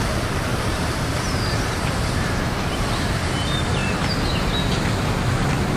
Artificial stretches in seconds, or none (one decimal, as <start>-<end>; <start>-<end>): 0.5-3.3